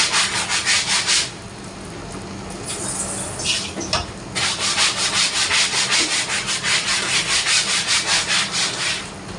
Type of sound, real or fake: real